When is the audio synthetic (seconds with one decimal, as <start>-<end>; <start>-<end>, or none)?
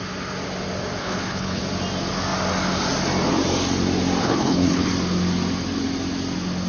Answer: 1.0-1.6; 4.2-4.9